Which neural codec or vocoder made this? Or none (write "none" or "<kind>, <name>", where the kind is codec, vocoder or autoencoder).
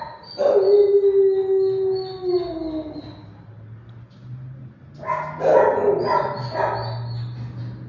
none